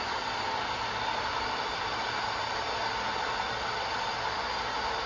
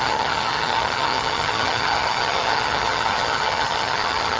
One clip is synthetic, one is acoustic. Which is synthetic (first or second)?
second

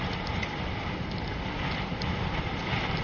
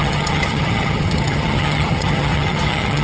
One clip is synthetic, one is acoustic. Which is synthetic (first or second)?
second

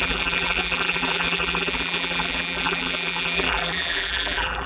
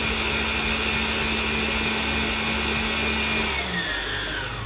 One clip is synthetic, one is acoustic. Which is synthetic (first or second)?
first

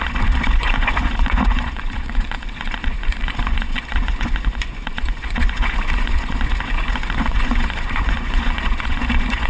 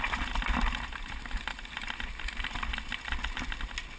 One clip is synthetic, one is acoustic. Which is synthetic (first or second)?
first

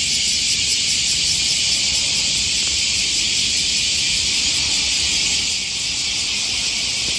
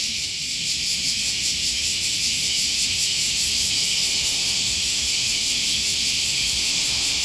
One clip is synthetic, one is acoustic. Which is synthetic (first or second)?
second